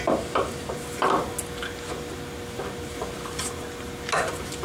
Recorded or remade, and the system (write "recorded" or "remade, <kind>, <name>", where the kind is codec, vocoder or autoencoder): recorded